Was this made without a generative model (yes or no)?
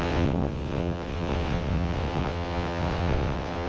no